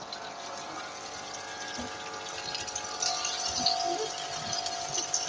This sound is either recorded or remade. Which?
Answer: recorded